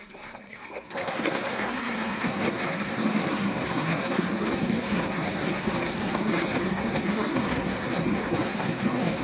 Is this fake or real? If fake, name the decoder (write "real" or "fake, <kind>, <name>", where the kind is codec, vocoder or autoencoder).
fake, codec, SNAC